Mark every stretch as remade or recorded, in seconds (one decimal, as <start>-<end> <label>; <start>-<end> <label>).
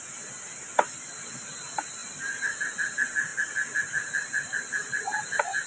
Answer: 0.0-5.7 recorded